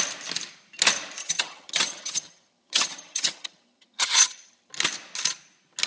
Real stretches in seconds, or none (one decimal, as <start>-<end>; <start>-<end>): 0.0-1.2; 4.7-5.9